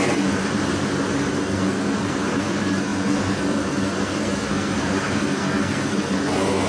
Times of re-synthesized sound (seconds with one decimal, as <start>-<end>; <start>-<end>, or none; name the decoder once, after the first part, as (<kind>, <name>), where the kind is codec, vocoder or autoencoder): 0.0-0.4 (codec, SNAC); 1.4-6.7